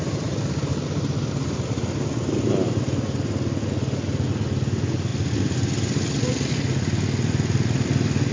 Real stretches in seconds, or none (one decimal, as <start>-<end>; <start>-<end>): 0.0-8.3